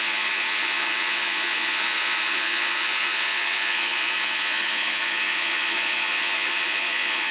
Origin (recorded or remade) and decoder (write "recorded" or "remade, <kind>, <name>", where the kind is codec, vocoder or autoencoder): remade, vocoder, Vocos